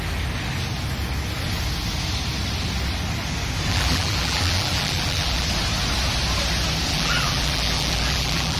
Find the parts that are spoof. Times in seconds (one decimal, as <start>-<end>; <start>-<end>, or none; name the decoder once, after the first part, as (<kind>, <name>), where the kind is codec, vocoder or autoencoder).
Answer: 3.7-5.5 (vocoder, BigVGAN v2); 6.9-8.6